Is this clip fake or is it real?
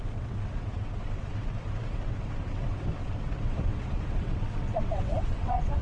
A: fake